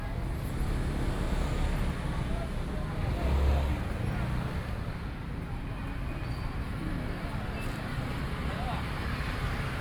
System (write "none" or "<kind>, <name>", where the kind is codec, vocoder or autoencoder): none